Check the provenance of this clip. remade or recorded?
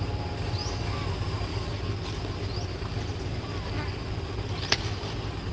recorded